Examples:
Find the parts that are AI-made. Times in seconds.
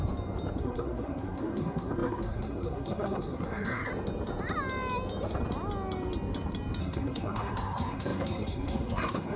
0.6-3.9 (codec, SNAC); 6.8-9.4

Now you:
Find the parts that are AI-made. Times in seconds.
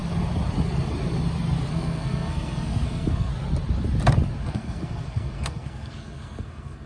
1.7-3.3 (codec, SNAC); 4.4-6.9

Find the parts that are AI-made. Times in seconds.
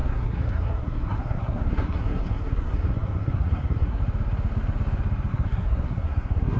0.0-4.0 (codec, SNAC); 5.3-6.6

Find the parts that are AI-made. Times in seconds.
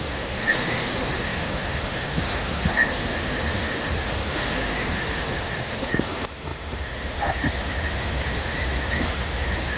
0.0-9.8 (autoencoder, DAC-VAE)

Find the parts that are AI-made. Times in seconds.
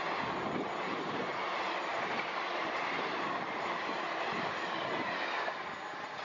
none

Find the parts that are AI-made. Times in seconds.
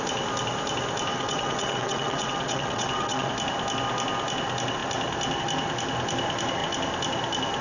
1.1-3.3 (vocoder, WaveNeXt)